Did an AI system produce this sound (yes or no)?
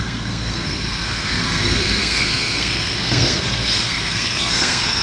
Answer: yes